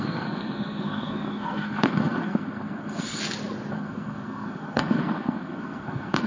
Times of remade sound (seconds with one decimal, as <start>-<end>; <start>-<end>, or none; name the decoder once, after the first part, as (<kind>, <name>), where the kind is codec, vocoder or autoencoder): 0.0-3.2 (codec, SNAC); 3.7-6.3